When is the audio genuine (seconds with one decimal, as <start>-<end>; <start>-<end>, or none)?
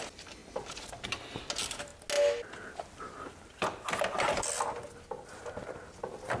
0.0-6.4